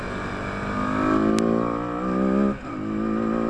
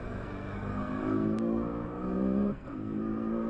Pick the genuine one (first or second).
first